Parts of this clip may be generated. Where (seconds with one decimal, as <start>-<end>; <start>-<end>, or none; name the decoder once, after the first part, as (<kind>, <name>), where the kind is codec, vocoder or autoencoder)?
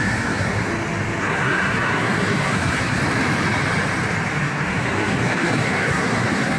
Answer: 0.0-0.7 (codec, SNAC); 1.2-3.0; 4.4-6.6